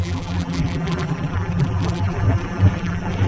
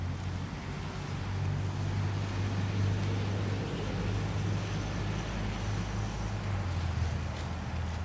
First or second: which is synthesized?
first